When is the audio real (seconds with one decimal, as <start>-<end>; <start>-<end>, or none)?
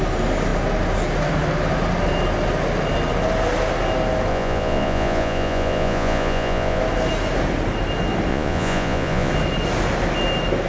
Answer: 0.0-4.3; 6.8-8.3; 9.3-10.7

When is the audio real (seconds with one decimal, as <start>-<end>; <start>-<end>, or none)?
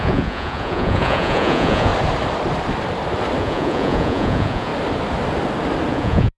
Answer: 1.9-3.4; 4.7-5.9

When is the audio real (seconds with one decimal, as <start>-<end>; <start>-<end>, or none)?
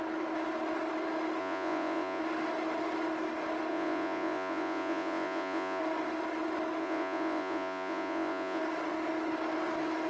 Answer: 0.0-1.4; 2.2-3.7; 5.8-6.8; 8.6-10.1